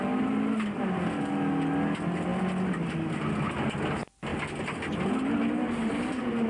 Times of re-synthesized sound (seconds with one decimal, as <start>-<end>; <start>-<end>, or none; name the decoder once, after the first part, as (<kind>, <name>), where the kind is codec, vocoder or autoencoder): none